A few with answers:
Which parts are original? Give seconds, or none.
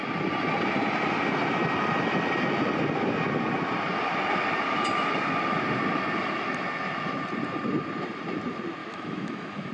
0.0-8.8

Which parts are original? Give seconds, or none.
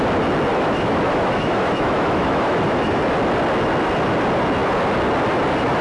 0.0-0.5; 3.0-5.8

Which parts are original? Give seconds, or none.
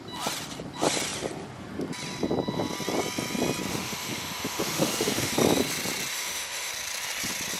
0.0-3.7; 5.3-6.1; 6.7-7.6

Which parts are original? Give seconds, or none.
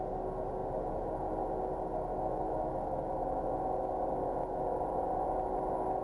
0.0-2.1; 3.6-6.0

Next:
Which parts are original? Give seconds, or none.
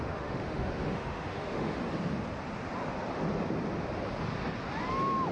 1.8-5.3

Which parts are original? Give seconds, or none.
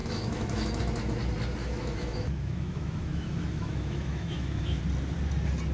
0.8-1.6; 4.8-5.7